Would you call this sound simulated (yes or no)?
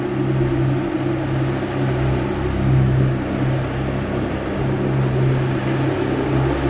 no